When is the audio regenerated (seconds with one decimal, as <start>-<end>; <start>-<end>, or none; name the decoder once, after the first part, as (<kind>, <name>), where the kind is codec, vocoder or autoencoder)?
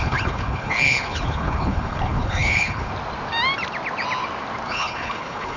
0.0-2.9 (codec, HILCodec); 4.7-5.6